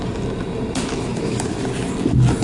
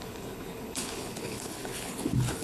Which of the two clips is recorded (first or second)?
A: first